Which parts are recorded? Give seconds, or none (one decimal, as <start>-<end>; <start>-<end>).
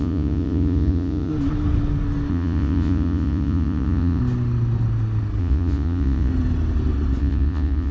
1.3-2.3; 4.2-5.4; 6.3-7.2